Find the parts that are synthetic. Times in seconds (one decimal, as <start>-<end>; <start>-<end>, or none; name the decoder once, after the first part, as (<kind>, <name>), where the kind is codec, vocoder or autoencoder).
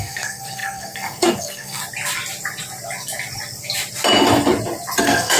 0.0-1.8 (codec, SNAC); 5.0-5.4